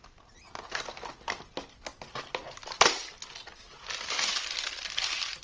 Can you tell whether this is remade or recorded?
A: recorded